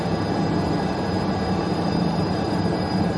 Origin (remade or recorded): remade